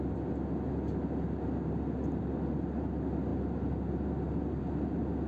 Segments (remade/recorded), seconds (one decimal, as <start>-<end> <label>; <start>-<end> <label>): 0.0-5.3 recorded